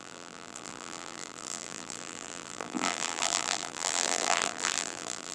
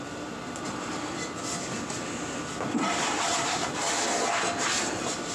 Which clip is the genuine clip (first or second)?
second